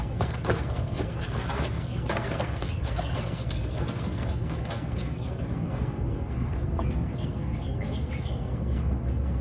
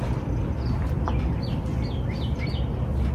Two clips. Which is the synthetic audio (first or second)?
first